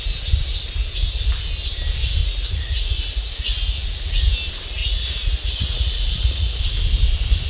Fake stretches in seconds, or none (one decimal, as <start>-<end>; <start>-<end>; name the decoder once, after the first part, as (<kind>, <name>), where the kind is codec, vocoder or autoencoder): 2.2-4.2 (vocoder, Vocos); 4.8-6.6